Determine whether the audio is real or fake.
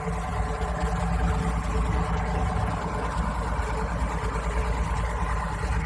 real